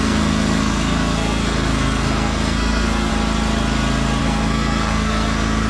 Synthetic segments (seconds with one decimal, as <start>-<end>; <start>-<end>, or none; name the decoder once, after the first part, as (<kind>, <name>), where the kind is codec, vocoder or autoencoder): 0.0-3.1 (codec, SNAC); 4.2-5.7